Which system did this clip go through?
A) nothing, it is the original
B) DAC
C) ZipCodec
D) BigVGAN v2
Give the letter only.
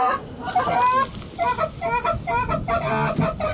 A